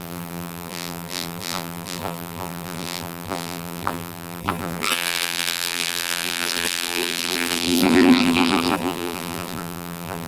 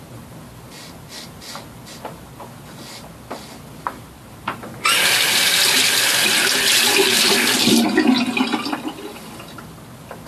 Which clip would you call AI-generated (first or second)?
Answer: first